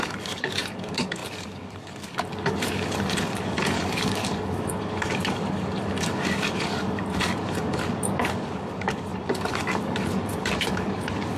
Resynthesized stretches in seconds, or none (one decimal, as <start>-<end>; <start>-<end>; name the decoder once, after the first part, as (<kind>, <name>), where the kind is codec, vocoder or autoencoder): 0.0-11.4 (codec, DAC)